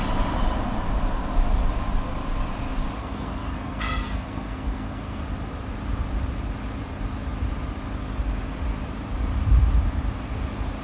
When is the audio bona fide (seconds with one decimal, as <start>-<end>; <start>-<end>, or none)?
0.0-3.0; 5.2-10.8